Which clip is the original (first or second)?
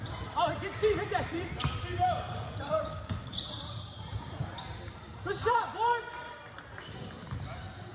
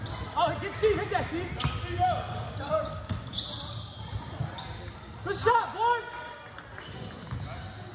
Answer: second